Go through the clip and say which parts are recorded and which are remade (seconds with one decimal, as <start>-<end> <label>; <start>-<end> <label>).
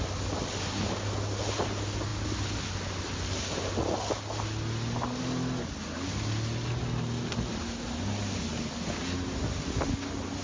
0.0-10.4 recorded